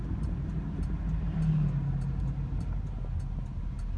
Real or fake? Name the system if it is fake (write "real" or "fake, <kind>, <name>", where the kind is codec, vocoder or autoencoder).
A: real